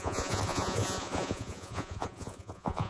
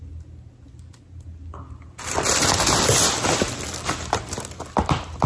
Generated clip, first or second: first